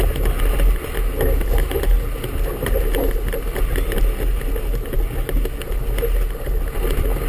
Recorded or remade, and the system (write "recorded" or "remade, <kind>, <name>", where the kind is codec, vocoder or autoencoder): recorded